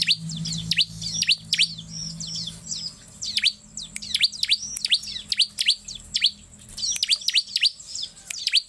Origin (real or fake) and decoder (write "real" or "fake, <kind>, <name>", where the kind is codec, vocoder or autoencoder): real